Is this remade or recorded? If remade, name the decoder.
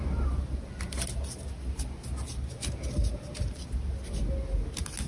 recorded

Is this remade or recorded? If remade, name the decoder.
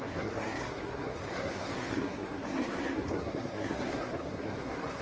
remade, codec, SNAC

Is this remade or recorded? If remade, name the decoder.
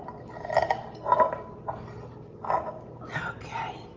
recorded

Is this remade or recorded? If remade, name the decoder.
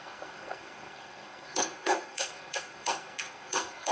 remade, codec, SNAC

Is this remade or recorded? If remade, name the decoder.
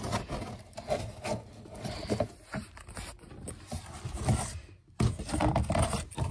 recorded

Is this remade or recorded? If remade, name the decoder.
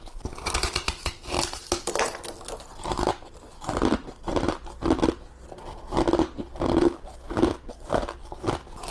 recorded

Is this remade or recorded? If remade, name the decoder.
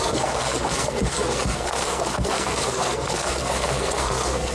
remade, codec, SNAC